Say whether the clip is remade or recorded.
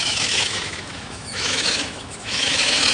remade